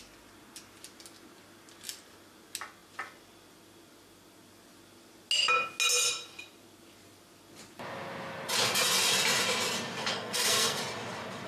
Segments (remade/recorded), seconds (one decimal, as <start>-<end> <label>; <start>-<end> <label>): 0.0-10.0 recorded; 10.0-10.8 remade; 10.8-11.5 recorded